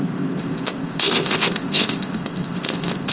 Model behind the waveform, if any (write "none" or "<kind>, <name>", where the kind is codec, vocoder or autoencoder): codec, ZipCodec